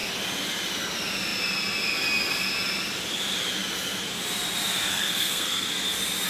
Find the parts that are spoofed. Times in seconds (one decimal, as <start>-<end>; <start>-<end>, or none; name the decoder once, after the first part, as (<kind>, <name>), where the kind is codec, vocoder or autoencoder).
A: 4.9-5.7 (codec, SNAC)